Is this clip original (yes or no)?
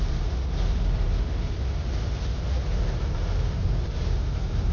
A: no